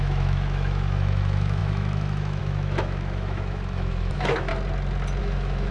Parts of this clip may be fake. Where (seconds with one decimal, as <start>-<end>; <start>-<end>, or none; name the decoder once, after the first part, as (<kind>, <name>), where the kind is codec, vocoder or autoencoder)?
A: 0.0-4.5 (autoencoder, DAC-VAE); 5.2-5.7